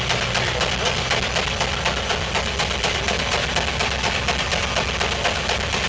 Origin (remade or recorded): recorded